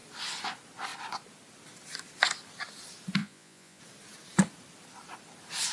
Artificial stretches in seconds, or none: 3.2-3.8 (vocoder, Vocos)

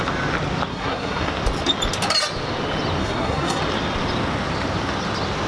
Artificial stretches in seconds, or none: 0.7-1.3 (codec, SNAC); 3.0-3.6

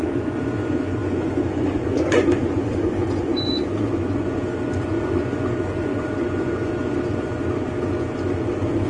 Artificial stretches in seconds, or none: 0.0-8.9 (vocoder, Vocos)

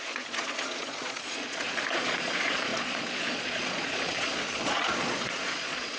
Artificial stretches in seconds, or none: 0.0-6.0 (vocoder, Vocos)

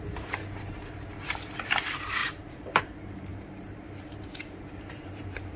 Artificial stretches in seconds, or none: 0.0-0.4 (vocoder, BigVGAN v2); 1.7-5.6

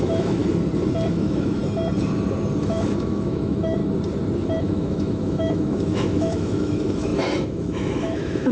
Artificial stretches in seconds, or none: 0.0-0.4 (autoencoder, DAC-VAE); 1.1-1.6; 2.6-3.8; 4.6-8.5